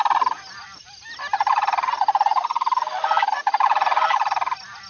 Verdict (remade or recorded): recorded